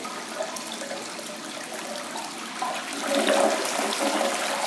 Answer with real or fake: real